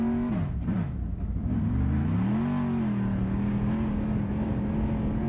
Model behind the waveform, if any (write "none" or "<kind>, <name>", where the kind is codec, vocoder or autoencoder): none